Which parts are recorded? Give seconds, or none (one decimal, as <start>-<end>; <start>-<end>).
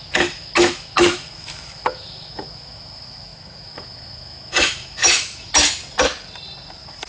5.5-7.1